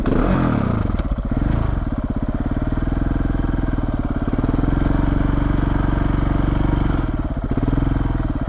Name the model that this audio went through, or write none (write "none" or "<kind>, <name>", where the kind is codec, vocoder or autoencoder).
none